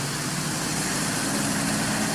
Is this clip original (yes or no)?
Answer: yes